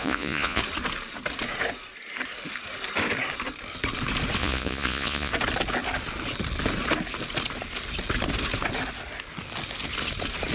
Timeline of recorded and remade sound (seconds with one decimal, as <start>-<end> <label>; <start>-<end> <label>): 0.0-0.6 remade; 0.6-4.4 recorded; 4.4-5.3 remade; 5.3-10.5 recorded